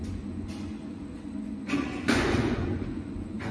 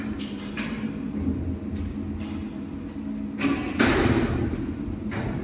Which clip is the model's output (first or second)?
first